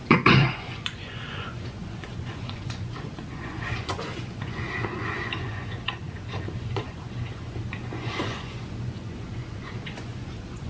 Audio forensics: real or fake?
fake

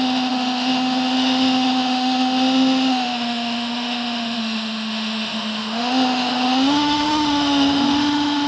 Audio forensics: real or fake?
fake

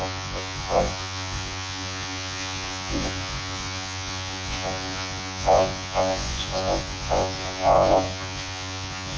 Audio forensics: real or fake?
fake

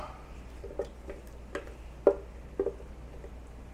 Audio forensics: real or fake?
real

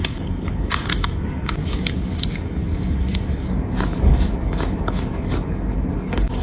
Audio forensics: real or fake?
fake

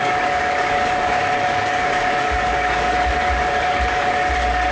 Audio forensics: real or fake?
fake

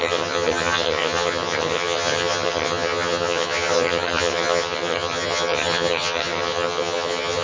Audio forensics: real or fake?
fake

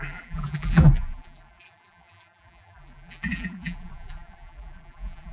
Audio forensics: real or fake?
fake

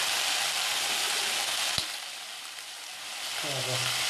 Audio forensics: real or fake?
real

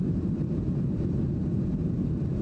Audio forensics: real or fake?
real